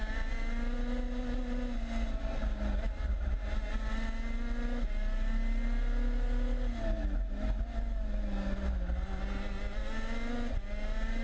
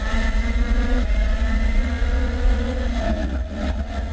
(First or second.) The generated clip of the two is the second